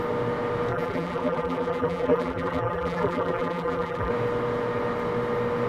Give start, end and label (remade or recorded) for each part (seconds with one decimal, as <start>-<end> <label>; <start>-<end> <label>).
0.0-0.7 recorded; 0.7-4.1 remade; 4.1-5.7 recorded